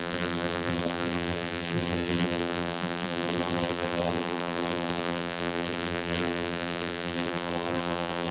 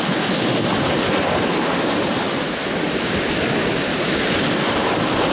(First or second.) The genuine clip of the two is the second